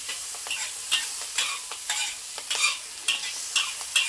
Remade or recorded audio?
recorded